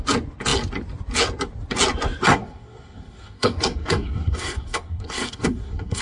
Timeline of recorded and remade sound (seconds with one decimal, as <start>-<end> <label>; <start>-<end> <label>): 0.0-2.3 recorded; 2.3-6.0 remade

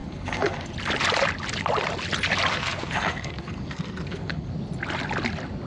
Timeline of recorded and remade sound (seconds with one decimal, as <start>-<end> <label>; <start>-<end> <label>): 0.0-0.7 remade; 0.7-2.5 recorded; 2.5-4.5 remade; 4.5-5.7 recorded

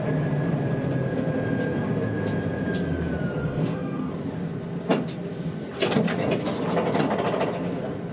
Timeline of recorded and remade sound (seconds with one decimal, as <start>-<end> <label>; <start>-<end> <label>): 0.0-3.4 recorded; 3.4-4.1 remade; 4.1-8.1 recorded

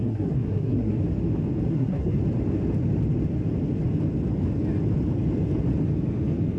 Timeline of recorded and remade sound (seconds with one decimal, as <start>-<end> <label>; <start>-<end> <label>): 0.0-1.0 remade; 1.0-1.7 recorded; 1.7-2.2 remade; 2.2-6.6 recorded

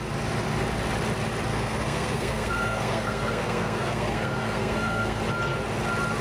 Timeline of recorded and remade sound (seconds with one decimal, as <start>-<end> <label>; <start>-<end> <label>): 0.0-1.5 recorded; 1.5-5.2 remade; 5.2-6.2 recorded

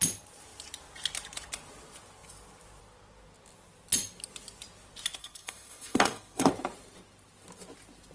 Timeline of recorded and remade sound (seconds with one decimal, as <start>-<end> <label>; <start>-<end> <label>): 0.0-5.2 recorded; 5.2-6.5 remade; 6.5-8.1 recorded